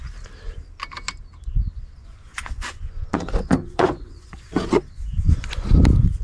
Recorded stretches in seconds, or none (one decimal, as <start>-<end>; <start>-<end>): 0.0-2.0; 5.7-6.2